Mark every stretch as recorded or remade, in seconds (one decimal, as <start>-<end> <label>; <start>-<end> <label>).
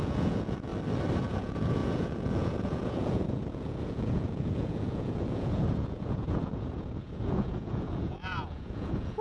0.0-0.7 remade; 0.7-1.2 recorded; 1.2-9.2 remade